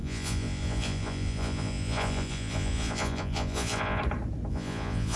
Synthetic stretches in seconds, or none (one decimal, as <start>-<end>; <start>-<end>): 0.0-4.0; 4.5-5.2